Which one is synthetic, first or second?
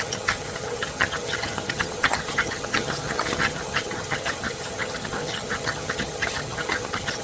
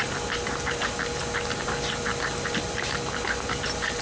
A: first